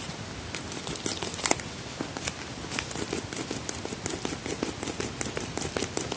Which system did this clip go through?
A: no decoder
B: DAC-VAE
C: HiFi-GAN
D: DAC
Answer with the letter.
A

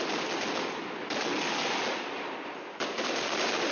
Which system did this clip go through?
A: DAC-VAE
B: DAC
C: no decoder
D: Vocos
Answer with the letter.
C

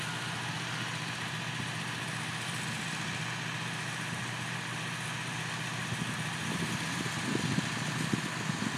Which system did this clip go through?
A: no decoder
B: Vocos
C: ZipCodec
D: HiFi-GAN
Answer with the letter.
A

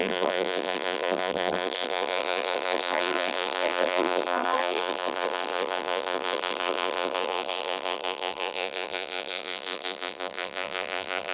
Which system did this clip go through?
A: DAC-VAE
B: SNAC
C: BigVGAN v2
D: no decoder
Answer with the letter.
C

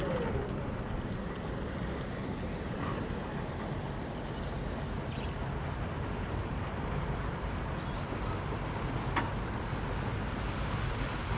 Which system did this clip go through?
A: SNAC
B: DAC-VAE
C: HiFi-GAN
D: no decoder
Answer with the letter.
D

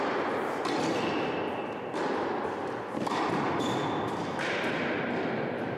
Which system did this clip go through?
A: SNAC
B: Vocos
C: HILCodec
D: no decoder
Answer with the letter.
D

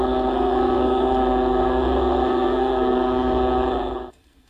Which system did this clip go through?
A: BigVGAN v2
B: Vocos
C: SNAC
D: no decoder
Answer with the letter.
C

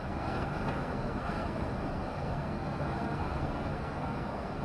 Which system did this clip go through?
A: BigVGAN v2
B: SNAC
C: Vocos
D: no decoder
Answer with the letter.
B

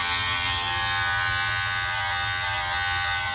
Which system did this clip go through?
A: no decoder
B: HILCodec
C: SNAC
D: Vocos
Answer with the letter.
A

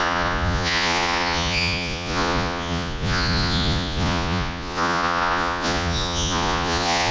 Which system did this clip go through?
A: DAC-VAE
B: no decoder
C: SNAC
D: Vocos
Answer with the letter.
D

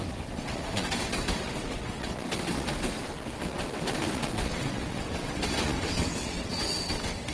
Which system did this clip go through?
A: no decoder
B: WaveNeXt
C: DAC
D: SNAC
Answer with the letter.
B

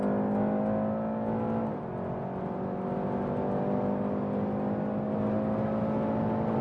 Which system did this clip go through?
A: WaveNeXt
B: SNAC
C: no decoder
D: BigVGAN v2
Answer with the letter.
C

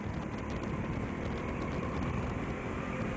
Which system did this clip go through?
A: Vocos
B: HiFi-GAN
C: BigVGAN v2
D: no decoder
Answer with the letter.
D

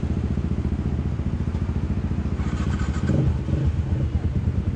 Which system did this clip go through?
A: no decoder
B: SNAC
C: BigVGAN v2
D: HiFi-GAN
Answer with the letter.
A